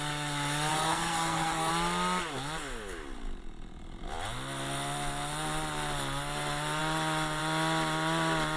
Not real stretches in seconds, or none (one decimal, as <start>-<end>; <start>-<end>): 0.7-1.7